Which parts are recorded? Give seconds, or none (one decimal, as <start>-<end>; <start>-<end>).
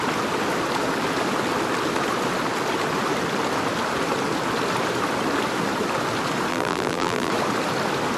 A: 0.0-6.5; 7.3-8.2